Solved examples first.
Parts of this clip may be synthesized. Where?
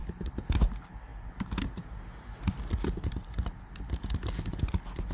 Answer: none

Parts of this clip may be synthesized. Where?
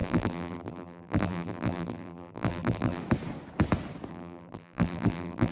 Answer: 0.0-3.0 (vocoder, BigVGAN v2); 4.1-5.5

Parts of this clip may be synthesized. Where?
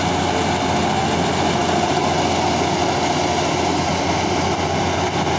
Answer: none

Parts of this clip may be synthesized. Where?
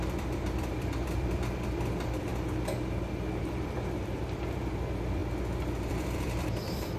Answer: 0.0-2.3 (vocoder, BigVGAN v2); 3.4-5.2; 5.9-7.0